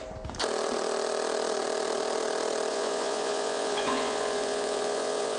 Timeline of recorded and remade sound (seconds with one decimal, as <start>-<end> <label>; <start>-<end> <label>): 0.0-2.7 recorded; 2.7-5.4 remade

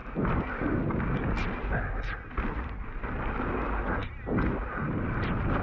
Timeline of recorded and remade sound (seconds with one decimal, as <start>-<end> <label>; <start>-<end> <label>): 0.0-5.6 recorded

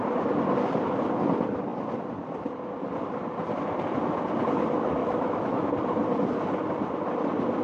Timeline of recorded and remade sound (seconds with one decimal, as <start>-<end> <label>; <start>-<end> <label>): 0.0-5.0 recorded; 5.0-5.7 remade; 5.7-7.6 recorded